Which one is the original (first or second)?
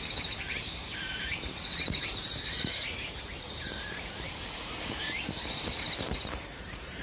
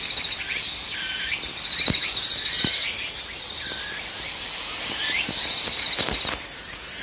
second